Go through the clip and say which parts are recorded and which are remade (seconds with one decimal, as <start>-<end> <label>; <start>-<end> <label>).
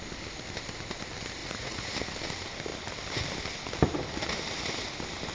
0.0-1.4 recorded; 1.4-1.9 remade; 1.9-5.3 recorded